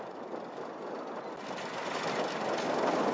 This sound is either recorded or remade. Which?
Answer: recorded